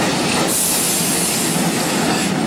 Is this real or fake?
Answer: real